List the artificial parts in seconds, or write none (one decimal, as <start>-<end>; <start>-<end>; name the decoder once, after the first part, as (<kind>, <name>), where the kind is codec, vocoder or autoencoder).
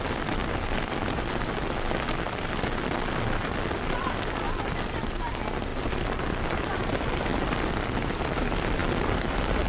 0.0-0.4 (vocoder, BigVGAN v2); 4.0-7.3; 8.3-8.8